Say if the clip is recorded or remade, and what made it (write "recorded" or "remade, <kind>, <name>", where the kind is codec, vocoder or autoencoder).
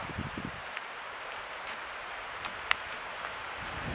remade, vocoder, BigVGAN v2